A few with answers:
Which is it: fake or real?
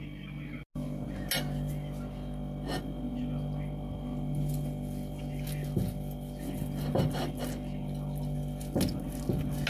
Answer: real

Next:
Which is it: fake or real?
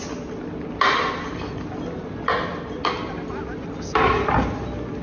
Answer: real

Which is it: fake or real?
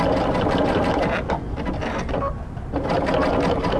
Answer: real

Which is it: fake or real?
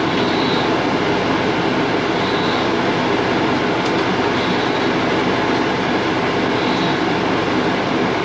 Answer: real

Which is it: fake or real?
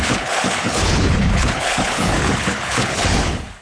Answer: fake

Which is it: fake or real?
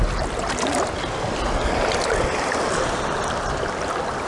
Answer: real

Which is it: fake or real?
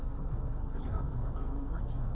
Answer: fake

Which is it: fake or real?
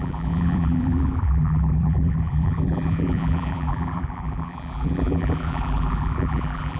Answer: fake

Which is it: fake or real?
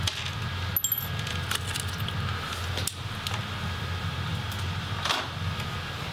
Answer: real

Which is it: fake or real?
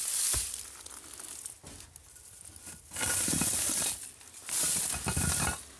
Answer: real